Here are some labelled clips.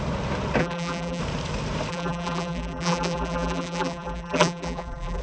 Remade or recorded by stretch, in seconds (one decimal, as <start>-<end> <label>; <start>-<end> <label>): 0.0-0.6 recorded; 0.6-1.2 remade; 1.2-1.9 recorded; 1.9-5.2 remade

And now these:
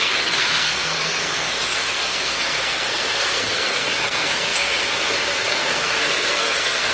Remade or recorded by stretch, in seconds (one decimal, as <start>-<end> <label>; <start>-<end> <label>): 0.0-6.9 remade

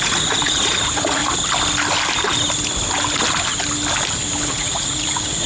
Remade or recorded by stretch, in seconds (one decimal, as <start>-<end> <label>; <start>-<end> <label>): 0.0-1.2 remade; 1.2-4.5 recorded; 4.5-5.5 remade